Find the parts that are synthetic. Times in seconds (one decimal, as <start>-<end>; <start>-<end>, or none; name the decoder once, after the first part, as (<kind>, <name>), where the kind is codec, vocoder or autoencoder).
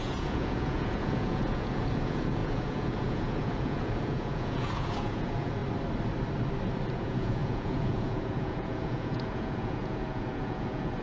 0.0-5.6 (vocoder, Vocos); 6.9-11.0